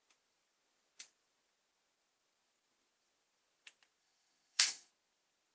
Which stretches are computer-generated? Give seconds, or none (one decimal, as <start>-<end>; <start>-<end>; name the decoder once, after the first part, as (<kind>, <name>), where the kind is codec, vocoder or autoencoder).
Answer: 4.0-4.9 (autoencoder, DAC-VAE)